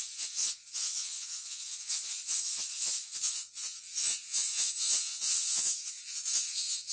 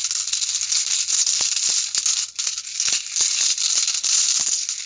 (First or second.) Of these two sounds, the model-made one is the first